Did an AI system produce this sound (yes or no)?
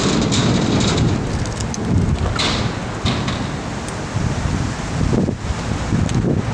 no